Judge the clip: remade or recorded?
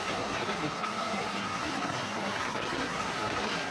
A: remade